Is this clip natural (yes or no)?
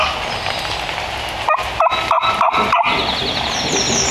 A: yes